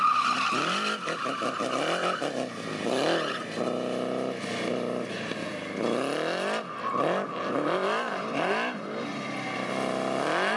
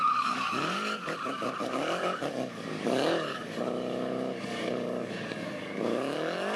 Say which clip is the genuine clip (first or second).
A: first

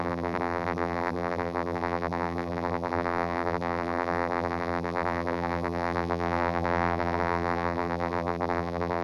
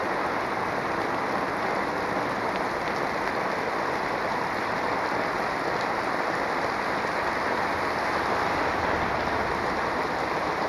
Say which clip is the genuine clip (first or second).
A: second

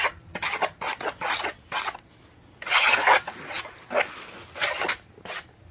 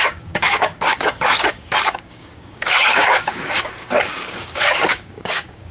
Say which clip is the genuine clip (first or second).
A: first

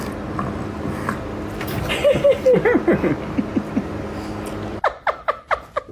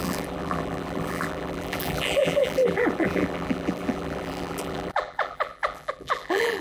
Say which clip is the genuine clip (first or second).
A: first